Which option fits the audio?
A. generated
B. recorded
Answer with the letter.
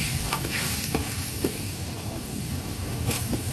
A